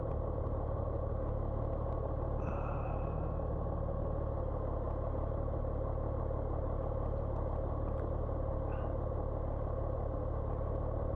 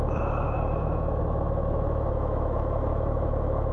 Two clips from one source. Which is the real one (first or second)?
first